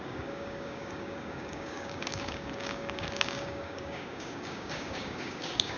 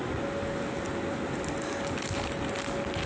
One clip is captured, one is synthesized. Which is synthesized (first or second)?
first